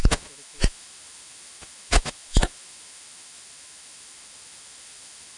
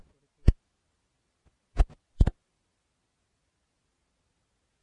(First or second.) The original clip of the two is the second